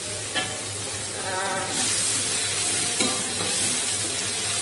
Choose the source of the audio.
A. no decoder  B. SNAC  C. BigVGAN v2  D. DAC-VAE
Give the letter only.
A